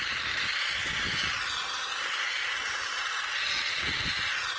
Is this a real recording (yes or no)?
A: yes